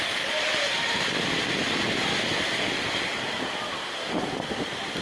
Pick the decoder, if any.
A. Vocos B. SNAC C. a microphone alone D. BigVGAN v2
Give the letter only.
C